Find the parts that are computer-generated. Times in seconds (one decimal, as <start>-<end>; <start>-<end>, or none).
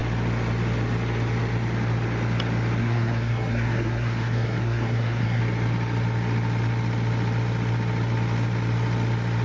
2.8-5.4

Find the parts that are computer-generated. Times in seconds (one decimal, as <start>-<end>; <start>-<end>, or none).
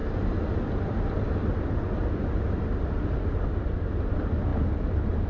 none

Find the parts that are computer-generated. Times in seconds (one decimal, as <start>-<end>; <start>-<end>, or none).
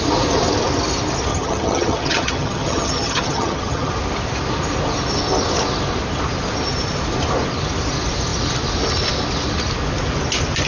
1.3-3.9